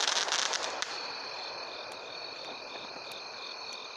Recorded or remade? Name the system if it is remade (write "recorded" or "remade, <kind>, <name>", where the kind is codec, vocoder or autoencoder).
recorded